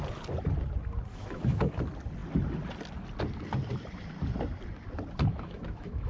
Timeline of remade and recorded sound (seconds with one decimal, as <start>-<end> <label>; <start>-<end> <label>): 0.0-1.1 recorded; 1.1-1.7 remade; 1.7-5.3 recorded; 5.3-6.1 remade